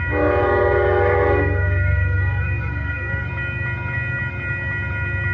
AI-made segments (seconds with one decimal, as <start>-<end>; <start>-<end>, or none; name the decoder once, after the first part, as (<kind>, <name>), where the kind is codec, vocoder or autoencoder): 0.4-3.3 (codec, SNAC)